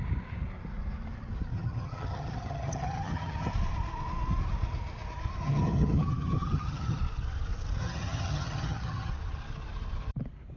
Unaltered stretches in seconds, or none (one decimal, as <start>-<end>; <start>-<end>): 0.0-1.5; 3.5-5.4; 7.0-7.8; 9.1-10.6